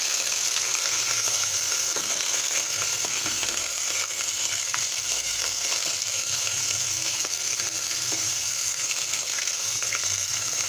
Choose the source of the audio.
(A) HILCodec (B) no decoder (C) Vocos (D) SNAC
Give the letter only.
D